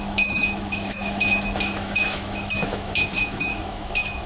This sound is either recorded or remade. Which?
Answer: remade